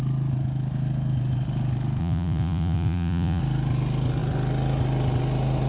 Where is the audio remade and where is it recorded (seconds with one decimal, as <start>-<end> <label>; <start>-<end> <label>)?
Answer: 0.0-2.0 recorded; 2.0-3.4 remade; 3.4-5.7 recorded